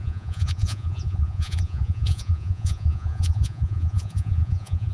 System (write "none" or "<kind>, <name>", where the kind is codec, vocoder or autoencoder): vocoder, Vocos